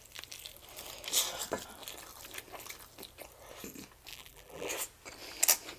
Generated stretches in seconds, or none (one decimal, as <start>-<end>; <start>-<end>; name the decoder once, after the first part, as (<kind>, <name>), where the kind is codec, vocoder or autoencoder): 4.1-4.7 (vocoder, BigVGAN v2)